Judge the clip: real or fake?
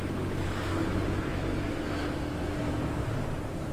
fake